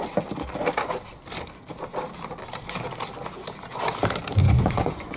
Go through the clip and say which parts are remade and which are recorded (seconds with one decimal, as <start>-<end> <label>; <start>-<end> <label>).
0.0-4.4 recorded; 4.4-5.2 remade